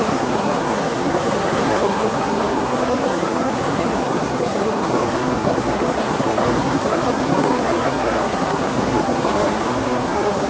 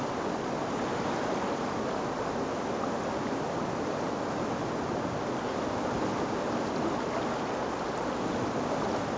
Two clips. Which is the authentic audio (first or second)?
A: second